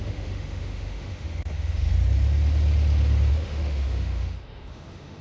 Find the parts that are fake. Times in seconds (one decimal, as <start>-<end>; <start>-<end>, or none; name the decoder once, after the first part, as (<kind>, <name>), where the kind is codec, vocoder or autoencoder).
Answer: 0.0-1.9 (autoencoder, DAC-VAE); 3.3-5.2